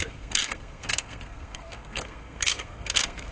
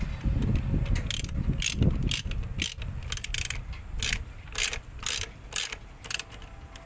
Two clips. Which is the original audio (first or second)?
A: second